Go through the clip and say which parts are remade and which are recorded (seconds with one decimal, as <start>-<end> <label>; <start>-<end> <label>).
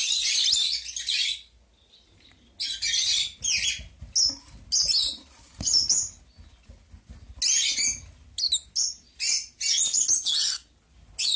0.0-5.0 recorded; 5.0-6.2 remade; 6.2-11.4 recorded